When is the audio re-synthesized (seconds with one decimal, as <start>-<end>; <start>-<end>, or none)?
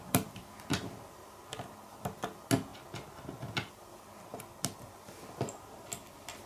none